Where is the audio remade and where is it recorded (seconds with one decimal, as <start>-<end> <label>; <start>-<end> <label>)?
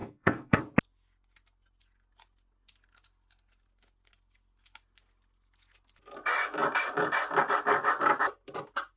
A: 0.0-0.6 remade; 0.6-9.0 recorded